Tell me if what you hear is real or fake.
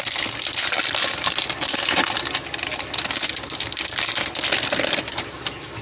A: real